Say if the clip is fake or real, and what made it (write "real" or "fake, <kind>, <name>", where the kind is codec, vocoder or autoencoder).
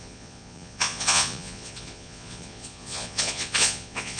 fake, vocoder, Vocos